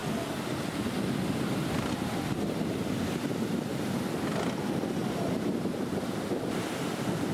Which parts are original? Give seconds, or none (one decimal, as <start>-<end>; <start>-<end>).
3.9-5.0; 5.8-7.3